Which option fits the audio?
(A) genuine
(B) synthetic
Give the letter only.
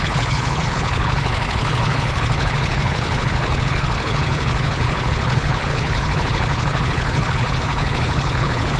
B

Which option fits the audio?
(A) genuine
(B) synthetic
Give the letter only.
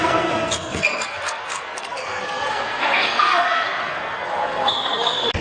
B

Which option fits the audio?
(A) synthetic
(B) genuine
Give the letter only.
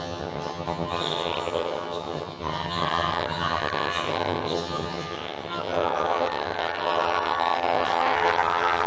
A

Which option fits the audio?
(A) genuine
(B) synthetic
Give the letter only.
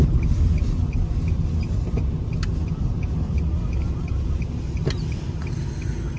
A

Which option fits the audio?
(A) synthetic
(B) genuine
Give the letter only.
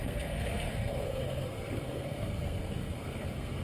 A